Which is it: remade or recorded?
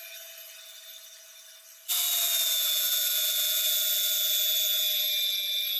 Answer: recorded